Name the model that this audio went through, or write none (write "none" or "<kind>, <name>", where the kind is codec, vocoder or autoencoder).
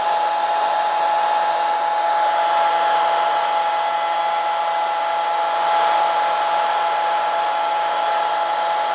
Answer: none